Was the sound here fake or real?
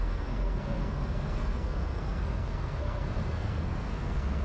fake